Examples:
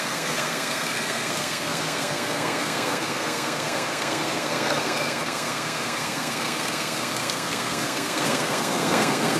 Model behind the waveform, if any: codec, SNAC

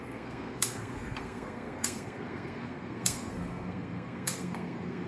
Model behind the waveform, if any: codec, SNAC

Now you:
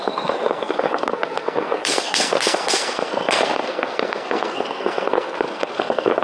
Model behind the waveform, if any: codec, SNAC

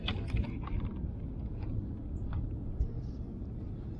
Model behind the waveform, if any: none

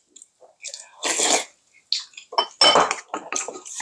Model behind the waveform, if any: none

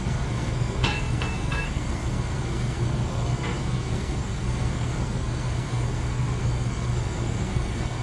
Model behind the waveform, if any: codec, SNAC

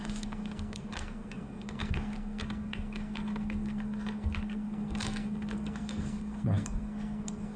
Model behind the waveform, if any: codec, SNAC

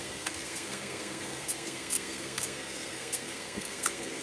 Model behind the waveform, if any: codec, SNAC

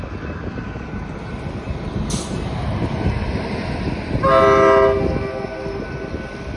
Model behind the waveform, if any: none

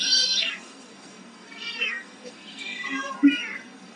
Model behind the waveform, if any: codec, SNAC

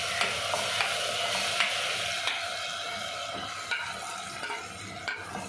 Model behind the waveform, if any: none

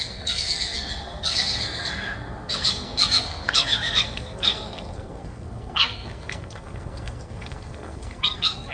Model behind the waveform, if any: codec, SNAC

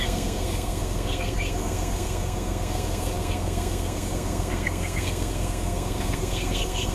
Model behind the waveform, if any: codec, SNAC